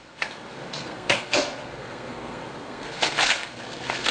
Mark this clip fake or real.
fake